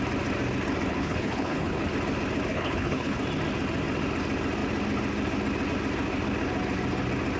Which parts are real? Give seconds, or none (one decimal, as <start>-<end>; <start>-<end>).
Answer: 0.0-0.9; 1.9-2.5; 3.2-7.4